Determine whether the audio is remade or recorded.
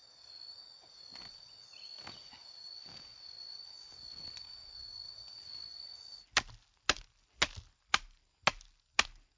recorded